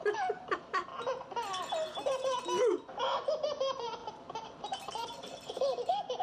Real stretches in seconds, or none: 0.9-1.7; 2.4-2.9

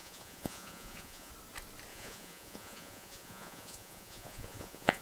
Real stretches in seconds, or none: 1.3-1.9

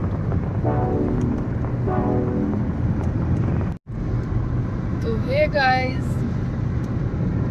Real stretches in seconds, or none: 0.0-4.9; 6.3-7.5

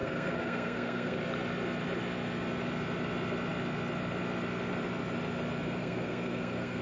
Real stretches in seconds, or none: 1.2-5.8

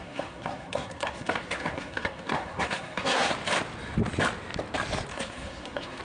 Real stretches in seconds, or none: 3.3-5.1

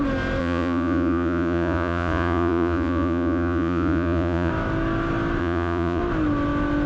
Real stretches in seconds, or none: 0.0-0.4; 4.5-5.4; 6.0-6.9

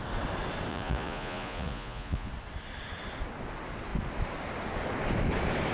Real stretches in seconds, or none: 0.0-0.7; 2.3-5.7

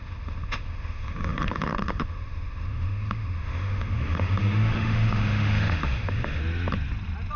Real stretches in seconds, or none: 6.4-7.4